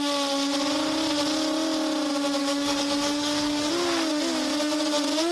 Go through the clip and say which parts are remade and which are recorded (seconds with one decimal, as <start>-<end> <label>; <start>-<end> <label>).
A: 0.0-2.4 recorded; 2.4-3.7 remade; 3.7-5.3 recorded

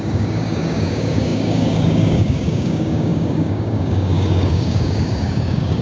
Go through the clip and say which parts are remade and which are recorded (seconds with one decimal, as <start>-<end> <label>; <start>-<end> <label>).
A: 0.0-5.8 remade

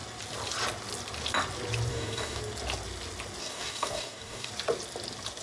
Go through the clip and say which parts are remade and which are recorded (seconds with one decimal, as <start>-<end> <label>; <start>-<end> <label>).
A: 0.0-1.9 recorded; 1.9-2.4 remade; 2.4-3.4 recorded; 3.4-4.5 remade; 4.5-5.4 recorded

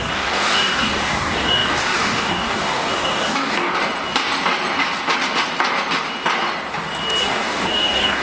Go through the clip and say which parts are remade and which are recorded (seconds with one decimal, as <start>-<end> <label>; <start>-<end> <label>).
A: 0.0-3.7 remade; 3.7-7.2 recorded; 7.2-8.2 remade